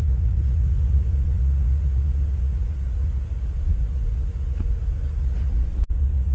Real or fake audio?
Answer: fake